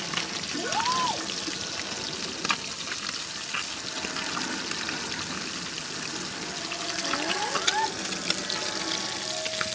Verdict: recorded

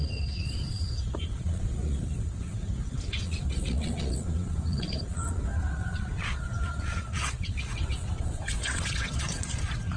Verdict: remade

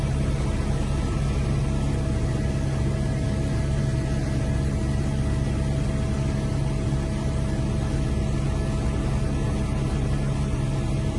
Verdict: recorded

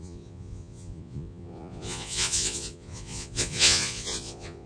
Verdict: remade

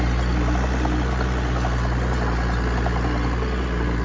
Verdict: recorded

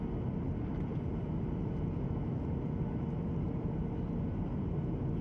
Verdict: recorded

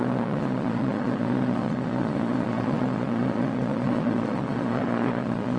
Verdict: remade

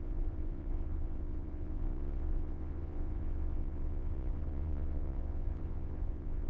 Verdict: remade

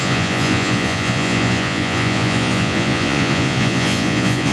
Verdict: remade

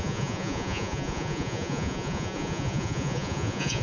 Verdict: remade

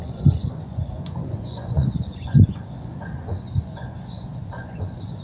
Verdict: remade